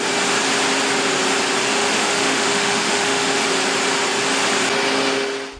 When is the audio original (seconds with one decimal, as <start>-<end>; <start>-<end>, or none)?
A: 0.0-1.7; 3.5-5.6